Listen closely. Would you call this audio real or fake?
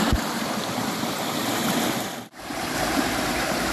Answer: fake